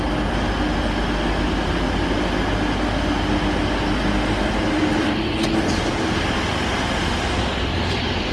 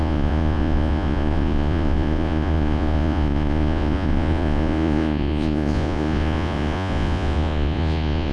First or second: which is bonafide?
first